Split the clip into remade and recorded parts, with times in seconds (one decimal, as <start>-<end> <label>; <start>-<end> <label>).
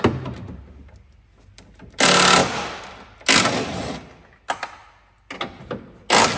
0.0-6.4 recorded